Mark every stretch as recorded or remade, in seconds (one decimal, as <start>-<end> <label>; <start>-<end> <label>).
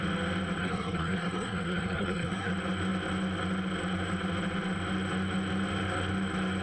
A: 0.0-0.6 recorded; 0.6-2.5 remade; 2.5-6.6 recorded